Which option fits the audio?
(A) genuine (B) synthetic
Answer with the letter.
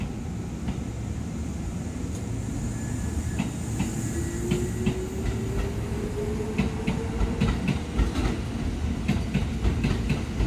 A